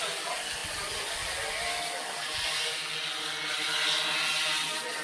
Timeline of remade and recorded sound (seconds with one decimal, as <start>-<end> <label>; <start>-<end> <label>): 0.0-5.0 recorded